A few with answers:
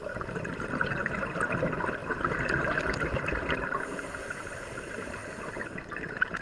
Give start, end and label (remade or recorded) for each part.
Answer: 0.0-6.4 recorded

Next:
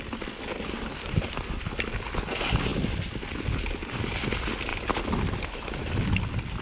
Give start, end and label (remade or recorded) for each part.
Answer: 0.0-6.6 recorded

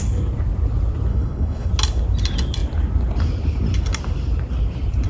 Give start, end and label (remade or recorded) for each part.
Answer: 0.0-1.1 recorded; 1.1-1.7 remade; 1.7-5.1 recorded

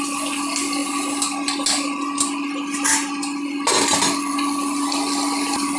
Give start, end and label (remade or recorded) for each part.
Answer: 0.0-5.8 recorded

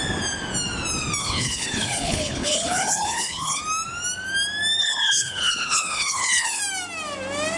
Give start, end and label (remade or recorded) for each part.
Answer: 0.0-1.2 recorded; 1.2-3.6 remade; 3.6-4.8 recorded; 4.8-6.6 remade; 6.6-7.6 recorded

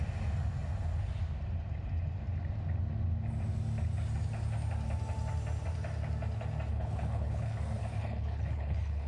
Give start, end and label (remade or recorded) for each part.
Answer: 0.0-6.7 recorded; 6.7-7.6 remade; 7.6-8.0 recorded; 8.0-9.1 remade

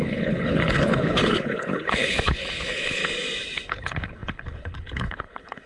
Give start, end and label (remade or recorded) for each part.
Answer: 0.0-3.0 remade; 3.0-3.7 recorded; 3.7-5.7 remade